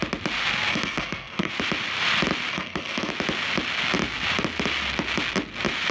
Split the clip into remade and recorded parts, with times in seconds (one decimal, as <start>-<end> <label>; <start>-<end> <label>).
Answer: 0.0-0.7 recorded; 0.7-1.5 remade; 1.5-2.5 recorded; 2.5-3.1 remade; 3.1-5.9 recorded